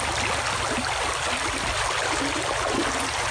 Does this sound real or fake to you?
real